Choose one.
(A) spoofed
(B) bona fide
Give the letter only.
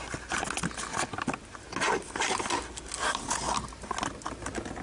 B